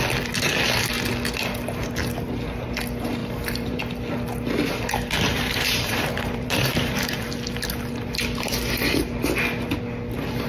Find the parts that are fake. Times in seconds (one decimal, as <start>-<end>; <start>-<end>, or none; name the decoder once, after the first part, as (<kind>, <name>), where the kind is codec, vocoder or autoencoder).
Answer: 3.2-3.8 (vocoder, BigVGAN v2); 5.3-7.3